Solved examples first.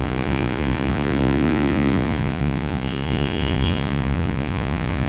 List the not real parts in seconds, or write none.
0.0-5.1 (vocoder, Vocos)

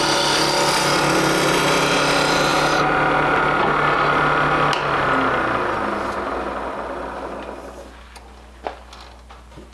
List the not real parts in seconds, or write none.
none

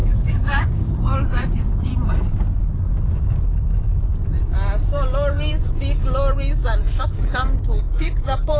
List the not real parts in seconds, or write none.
0.0-1.9 (codec, DAC); 7.0-8.6

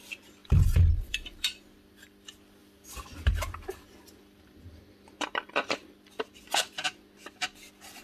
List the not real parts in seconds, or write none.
0.4-1.9 (vocoder, BigVGAN v2); 2.6-5.7

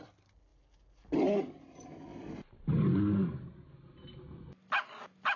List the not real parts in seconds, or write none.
none

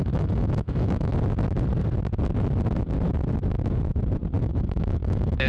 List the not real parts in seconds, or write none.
0.0-1.1 (autoencoder, DAC-VAE); 4.4-5.5

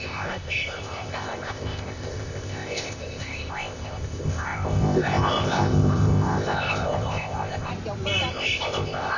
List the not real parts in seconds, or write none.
0.0-7.7 (codec, ZipCodec); 8.3-9.2

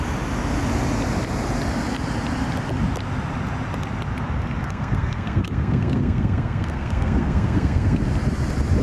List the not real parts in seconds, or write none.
4.6-8.0 (codec, SNAC)